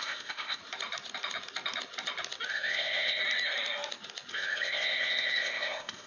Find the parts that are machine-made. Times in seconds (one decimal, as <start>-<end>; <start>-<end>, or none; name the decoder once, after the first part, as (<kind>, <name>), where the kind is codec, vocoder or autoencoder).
0.0-0.6 (codec, ZipCodec); 2.5-3.2; 4.3-6.1

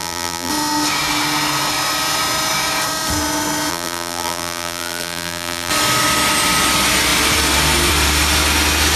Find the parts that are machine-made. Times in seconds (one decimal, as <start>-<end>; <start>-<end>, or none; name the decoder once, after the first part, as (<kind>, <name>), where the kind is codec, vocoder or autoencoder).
0.0-0.5 (vocoder, BigVGAN v2); 3.7-5.7

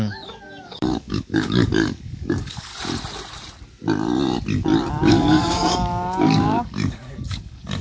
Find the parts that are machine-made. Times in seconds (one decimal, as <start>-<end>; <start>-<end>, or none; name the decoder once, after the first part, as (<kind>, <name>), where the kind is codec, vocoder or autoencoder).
0.0-2.7 (codec, DAC); 4.9-7.8

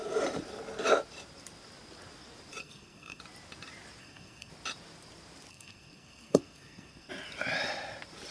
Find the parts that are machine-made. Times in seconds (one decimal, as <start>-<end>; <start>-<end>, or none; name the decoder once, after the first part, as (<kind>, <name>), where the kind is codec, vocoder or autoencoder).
2.6-3.2 (codec, SNAC); 4.0-4.5; 5.5-7.1

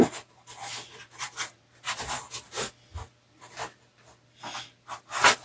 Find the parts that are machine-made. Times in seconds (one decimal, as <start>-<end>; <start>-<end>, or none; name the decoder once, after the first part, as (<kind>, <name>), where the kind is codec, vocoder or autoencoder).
0.6-3.8 (vocoder, BigVGAN v2)